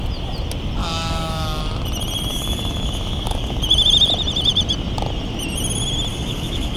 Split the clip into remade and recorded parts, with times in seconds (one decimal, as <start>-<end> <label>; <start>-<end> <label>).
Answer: 0.0-0.8 recorded; 0.8-1.6 remade; 1.6-2.3 recorded; 2.3-3.6 remade; 3.6-6.1 recorded; 6.1-6.8 remade